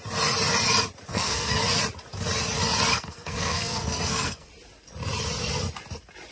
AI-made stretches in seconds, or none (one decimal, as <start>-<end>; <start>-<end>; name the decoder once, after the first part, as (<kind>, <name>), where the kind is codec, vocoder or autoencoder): 1.1-1.6 (codec, SNAC); 2.9-4.5